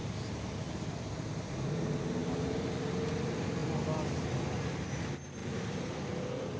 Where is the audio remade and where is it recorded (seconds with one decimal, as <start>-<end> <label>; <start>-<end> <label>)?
0.0-0.6 remade; 0.6-2.2 recorded; 2.2-2.7 remade; 2.7-5.4 recorded; 5.4-6.6 remade